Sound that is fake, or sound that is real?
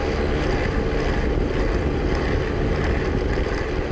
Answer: real